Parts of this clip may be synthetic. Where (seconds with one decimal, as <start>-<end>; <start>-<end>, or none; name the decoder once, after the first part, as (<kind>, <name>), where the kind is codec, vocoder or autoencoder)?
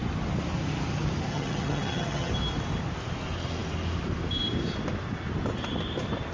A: 1.3-2.3 (vocoder, HiFi-GAN)